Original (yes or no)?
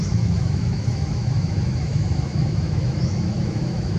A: no